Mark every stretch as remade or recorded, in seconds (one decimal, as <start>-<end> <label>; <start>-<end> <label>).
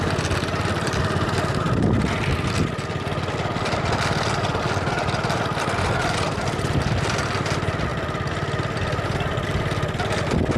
0.0-10.6 recorded